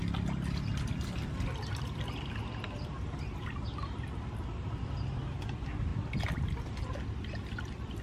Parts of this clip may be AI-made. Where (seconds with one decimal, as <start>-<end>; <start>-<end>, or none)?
none